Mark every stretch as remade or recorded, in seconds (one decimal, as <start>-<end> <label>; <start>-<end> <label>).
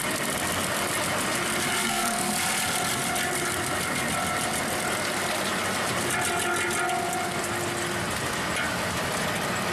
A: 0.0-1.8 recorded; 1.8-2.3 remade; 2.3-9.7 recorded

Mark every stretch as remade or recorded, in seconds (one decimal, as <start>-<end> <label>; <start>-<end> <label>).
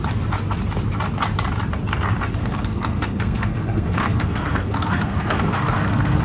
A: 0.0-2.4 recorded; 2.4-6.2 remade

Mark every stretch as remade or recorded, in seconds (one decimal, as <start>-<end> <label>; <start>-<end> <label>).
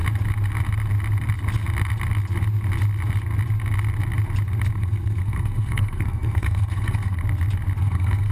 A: 0.0-4.7 recorded; 4.7-7.2 remade; 7.2-7.8 recorded; 7.8-8.3 remade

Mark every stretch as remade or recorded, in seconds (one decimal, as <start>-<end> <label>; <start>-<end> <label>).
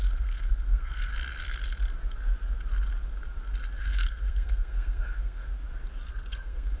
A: 0.0-1.1 remade; 1.1-3.8 recorded; 3.8-5.5 remade; 5.5-6.1 recorded; 6.1-6.8 remade